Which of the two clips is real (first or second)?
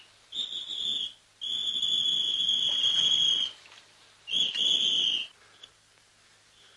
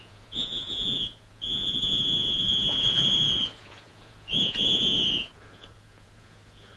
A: first